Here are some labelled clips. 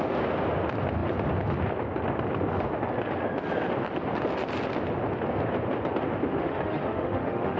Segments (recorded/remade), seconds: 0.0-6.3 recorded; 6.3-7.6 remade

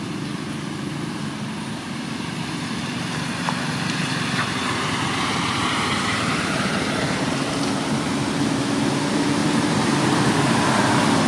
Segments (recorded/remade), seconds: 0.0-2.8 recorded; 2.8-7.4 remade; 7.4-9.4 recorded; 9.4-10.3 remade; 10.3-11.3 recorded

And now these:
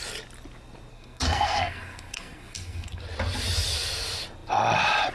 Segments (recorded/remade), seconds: 0.0-0.9 recorded; 0.9-3.0 remade; 3.0-5.1 recorded

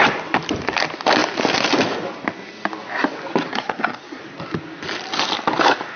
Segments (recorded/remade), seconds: 0.0-3.5 recorded; 3.5-4.2 remade; 4.2-6.0 recorded